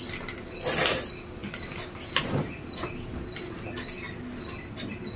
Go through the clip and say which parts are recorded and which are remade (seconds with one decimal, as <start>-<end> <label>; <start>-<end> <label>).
0.0-1.4 recorded; 1.4-2.2 remade; 2.2-5.2 recorded